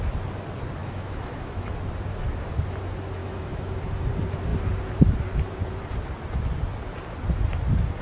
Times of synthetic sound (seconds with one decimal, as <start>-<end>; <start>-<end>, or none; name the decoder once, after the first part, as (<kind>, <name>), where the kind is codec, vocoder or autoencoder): 0.8-1.7 (autoencoder, DAC-VAE); 3.2-3.9